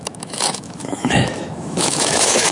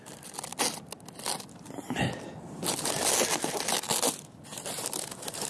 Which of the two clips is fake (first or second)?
first